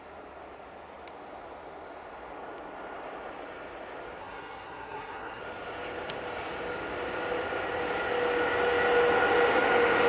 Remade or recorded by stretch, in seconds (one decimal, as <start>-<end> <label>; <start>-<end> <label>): 0.0-4.2 recorded; 4.2-5.4 remade; 5.4-10.1 recorded